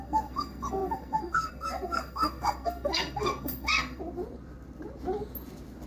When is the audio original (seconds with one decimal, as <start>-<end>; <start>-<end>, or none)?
4.0-5.9